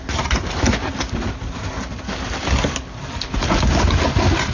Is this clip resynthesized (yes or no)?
no